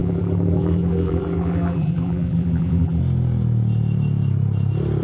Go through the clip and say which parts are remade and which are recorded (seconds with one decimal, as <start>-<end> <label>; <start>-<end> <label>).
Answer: 0.0-3.0 remade; 3.0-5.0 recorded